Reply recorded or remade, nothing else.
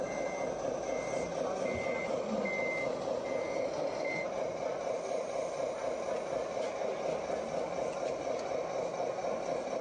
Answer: recorded